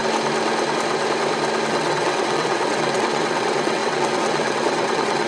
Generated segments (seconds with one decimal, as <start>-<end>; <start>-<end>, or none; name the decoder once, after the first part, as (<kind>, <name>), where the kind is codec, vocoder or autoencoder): 1.7-5.3 (vocoder, WaveNeXt)